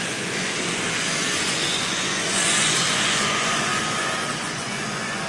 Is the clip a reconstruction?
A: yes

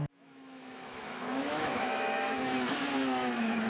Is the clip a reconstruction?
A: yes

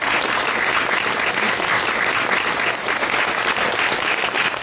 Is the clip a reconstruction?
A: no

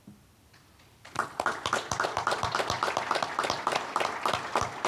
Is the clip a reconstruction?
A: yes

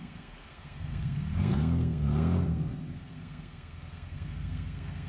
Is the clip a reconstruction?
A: yes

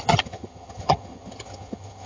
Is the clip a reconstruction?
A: yes